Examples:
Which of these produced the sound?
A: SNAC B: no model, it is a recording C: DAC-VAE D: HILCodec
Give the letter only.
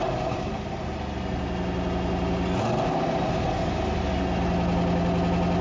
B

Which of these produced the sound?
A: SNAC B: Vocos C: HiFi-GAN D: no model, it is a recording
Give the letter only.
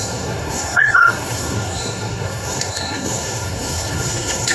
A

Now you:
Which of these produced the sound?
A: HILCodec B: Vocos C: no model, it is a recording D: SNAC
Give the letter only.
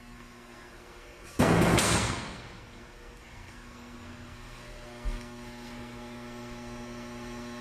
D